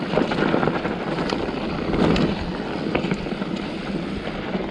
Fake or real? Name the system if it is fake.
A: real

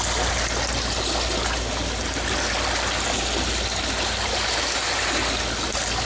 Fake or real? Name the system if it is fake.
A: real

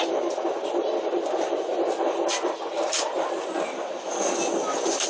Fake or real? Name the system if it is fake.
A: real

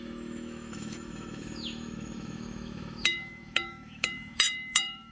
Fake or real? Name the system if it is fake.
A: fake, autoencoder, DAC-VAE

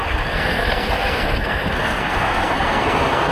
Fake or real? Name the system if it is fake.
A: fake, codec, SNAC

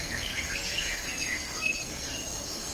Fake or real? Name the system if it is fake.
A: fake, codec, SNAC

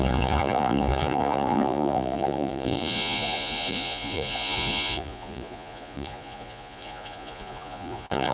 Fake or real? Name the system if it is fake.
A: fake, vocoder, Vocos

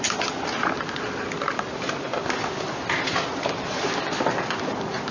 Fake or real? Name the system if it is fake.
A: fake, vocoder, BigVGAN v2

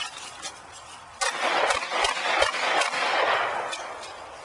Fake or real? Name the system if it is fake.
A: real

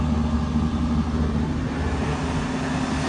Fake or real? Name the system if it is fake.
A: real